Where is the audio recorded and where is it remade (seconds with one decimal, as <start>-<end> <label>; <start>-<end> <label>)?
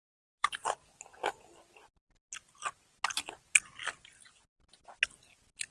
0.0-0.4 recorded; 0.4-1.0 remade; 1.0-3.8 recorded; 3.8-4.4 remade; 4.4-5.7 recorded